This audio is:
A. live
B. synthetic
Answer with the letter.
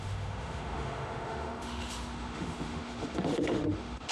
B